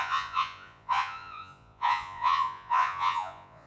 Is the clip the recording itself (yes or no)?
no